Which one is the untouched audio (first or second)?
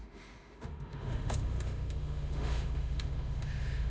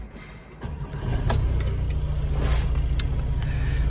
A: second